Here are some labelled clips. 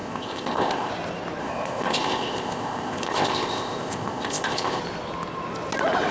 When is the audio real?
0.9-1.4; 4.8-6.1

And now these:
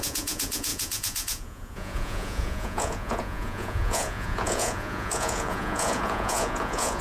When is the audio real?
none

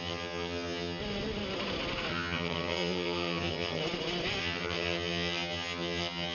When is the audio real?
1.0-2.1; 3.8-4.4

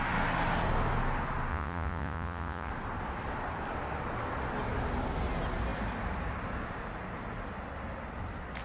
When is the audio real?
0.0-1.5; 2.7-8.6

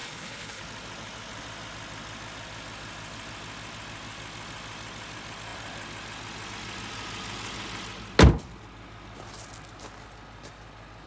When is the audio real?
0.6-11.1

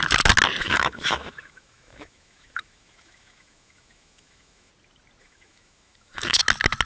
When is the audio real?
0.0-0.6; 4.7-5.2; 6.4-6.9